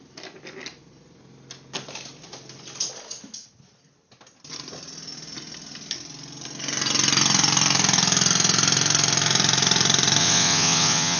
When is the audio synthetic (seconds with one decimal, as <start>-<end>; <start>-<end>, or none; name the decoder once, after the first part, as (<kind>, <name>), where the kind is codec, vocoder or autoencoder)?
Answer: 10.2-11.2 (vocoder, WaveNeXt)